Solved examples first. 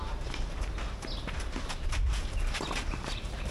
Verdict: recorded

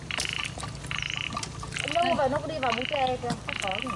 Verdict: recorded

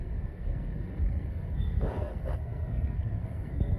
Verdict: remade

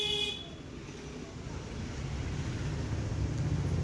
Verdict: recorded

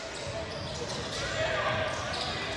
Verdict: recorded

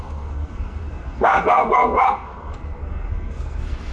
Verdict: remade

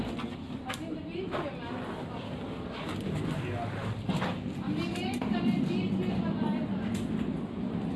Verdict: recorded